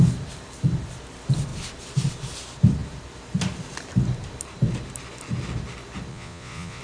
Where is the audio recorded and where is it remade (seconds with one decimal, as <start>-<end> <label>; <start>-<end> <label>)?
0.0-6.1 recorded; 6.1-6.8 remade